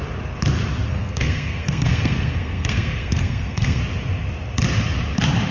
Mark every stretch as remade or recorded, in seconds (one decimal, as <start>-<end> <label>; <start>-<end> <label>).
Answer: 0.0-0.9 recorded; 0.9-3.8 remade; 3.8-5.5 recorded